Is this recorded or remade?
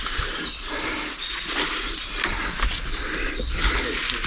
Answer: recorded